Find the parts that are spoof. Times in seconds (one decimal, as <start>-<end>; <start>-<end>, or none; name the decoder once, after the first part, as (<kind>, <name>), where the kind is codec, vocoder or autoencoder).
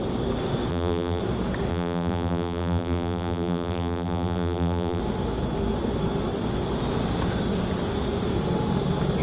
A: 0.7-1.2 (vocoder, BigVGAN v2); 1.7-5.0